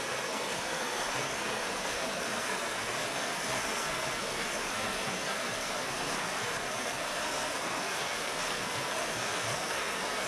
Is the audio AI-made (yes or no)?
yes